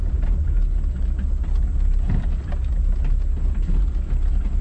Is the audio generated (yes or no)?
no